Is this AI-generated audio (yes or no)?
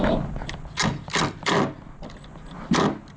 no